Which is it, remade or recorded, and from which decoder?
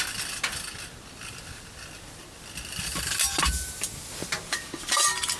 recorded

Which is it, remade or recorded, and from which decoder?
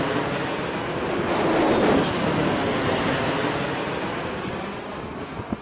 recorded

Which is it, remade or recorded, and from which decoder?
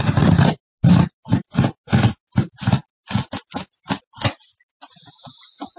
recorded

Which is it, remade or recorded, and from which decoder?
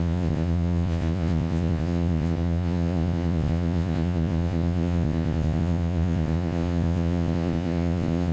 remade, vocoder, Vocos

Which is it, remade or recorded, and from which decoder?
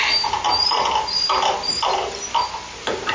recorded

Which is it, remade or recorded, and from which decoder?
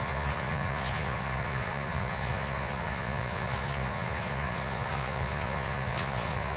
remade, vocoder, Vocos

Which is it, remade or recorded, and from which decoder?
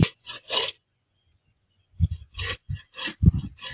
remade, vocoder, Vocos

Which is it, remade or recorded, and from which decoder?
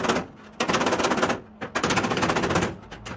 recorded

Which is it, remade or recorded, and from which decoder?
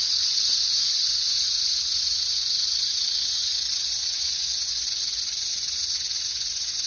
remade, vocoder, Vocos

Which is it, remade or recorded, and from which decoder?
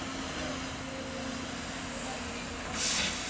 recorded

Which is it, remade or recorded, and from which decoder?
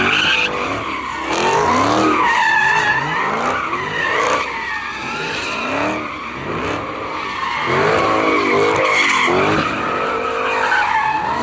recorded